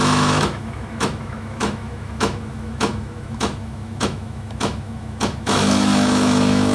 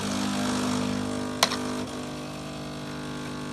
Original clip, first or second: second